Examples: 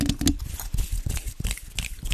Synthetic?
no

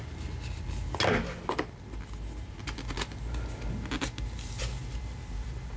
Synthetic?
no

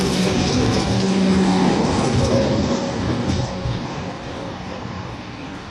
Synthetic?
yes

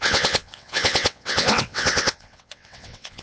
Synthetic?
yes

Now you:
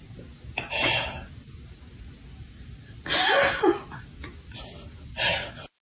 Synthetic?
no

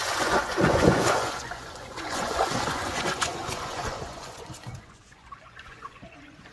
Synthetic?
yes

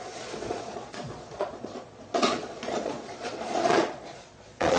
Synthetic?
yes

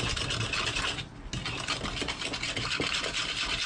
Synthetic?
no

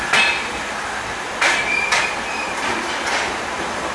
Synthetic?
no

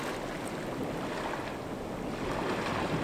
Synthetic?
no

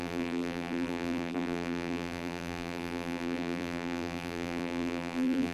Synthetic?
yes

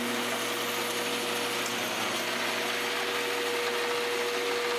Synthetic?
no